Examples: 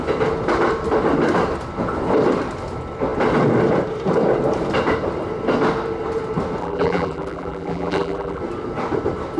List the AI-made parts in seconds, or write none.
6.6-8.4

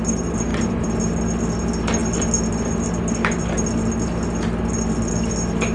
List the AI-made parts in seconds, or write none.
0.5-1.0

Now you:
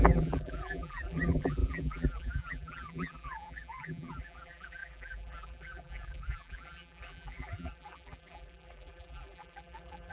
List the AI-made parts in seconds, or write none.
0.0-10.1

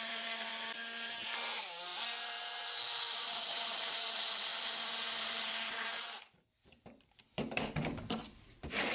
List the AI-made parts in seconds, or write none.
0.0-0.5; 1.4-8.9

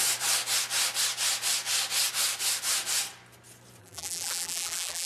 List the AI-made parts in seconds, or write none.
3.8-5.1

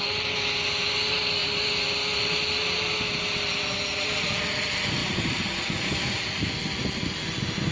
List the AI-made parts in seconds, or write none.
5.0-6.5

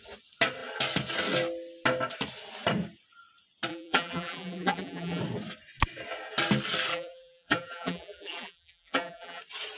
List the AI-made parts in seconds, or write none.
3.7-5.2; 6.9-9.4

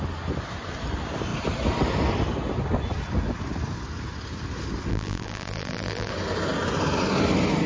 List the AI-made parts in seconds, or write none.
4.9-6.1